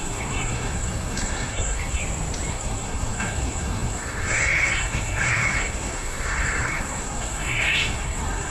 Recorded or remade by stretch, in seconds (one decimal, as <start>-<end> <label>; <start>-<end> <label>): 0.0-2.0 remade; 2.0-2.5 recorded; 2.5-8.5 remade